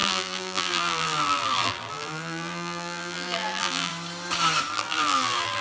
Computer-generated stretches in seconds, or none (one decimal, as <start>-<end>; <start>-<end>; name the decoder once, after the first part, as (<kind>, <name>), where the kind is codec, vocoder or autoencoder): 0.0-3.9 (vocoder, BigVGAN v2); 4.7-5.6